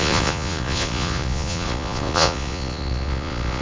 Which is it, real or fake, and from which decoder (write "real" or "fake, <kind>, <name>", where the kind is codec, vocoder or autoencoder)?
fake, vocoder, Vocos